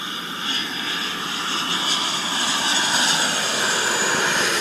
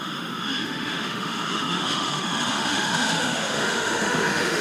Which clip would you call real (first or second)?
first